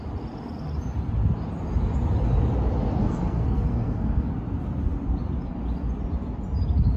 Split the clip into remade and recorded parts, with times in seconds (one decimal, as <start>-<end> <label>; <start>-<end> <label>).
0.0-3.0 recorded; 3.0-4.3 remade; 4.3-7.0 recorded